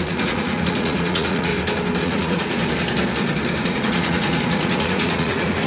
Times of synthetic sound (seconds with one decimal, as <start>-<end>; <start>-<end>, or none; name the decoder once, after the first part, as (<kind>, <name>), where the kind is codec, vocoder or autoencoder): 0.0-1.5 (vocoder, Vocos); 2.0-2.6; 3.6-5.7